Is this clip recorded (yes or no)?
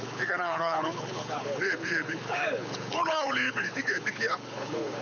no